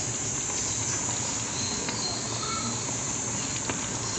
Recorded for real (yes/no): yes